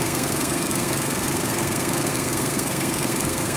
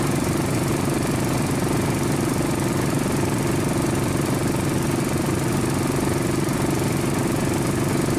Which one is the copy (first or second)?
first